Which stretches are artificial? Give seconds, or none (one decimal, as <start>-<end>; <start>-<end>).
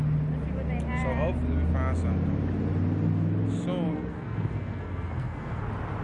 3.9-5.6